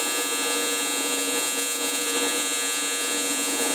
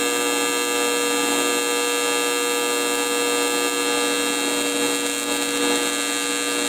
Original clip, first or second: second